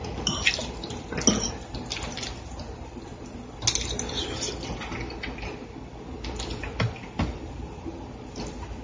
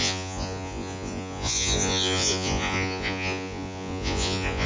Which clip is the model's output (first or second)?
second